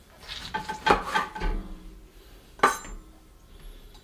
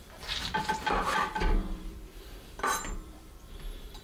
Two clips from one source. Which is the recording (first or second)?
first